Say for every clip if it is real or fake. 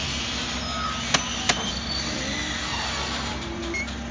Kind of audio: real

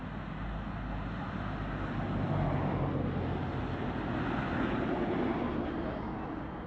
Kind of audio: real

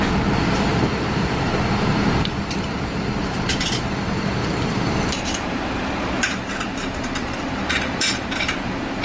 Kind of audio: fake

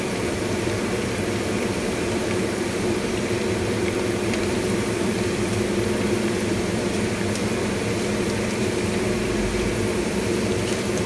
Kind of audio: fake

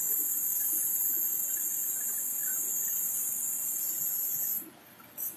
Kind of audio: real